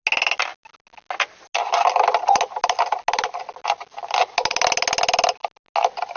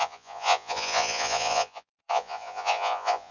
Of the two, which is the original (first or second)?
first